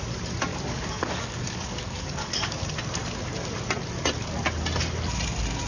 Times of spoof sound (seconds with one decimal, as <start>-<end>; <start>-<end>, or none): 0.5-2.6